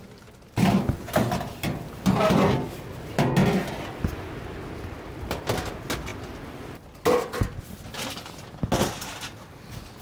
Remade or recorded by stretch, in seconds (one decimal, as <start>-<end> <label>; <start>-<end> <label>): 0.0-10.0 recorded